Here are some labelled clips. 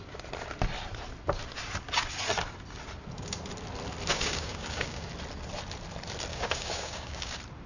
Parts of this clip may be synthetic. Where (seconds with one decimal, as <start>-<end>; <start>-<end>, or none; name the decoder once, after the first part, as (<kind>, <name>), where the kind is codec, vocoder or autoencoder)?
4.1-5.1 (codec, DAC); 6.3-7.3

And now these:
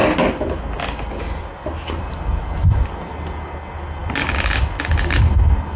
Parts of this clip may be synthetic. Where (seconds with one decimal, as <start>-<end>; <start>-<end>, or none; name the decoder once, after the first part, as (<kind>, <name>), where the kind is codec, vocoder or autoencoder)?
none

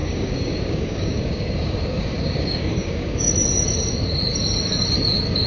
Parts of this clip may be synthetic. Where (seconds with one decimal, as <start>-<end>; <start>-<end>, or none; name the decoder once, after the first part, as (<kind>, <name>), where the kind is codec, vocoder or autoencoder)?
0.0-3.3 (codec, DAC)